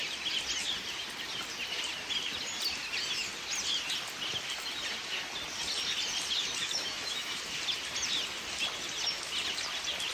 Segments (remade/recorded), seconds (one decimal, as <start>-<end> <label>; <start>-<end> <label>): 0.0-6.6 recorded; 6.6-7.4 remade; 7.4-10.1 recorded